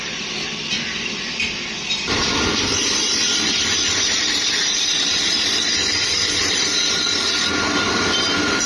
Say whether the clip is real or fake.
fake